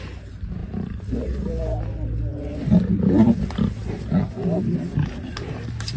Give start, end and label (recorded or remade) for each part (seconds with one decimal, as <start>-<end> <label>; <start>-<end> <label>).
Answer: 0.0-6.0 recorded